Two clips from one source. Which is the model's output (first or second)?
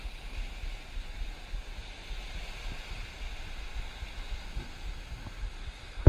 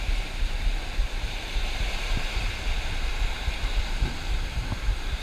second